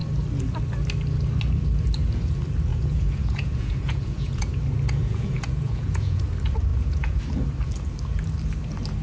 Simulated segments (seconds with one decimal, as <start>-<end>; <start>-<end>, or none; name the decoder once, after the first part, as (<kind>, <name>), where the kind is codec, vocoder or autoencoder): 2.7-4.6 (vocoder, Vocos); 5.0-6.2; 6.7-7.2